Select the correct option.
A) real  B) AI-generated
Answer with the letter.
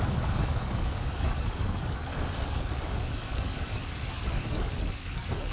B